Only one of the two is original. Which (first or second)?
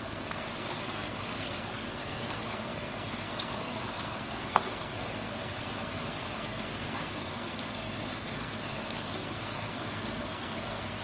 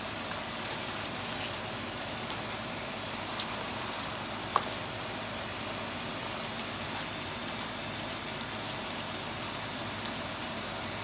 second